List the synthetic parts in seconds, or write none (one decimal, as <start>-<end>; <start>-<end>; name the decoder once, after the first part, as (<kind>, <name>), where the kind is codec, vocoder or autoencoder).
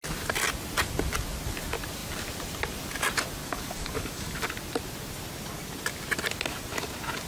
3.4-4.5 (codec, DAC)